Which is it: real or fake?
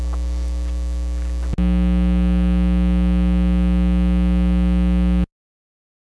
real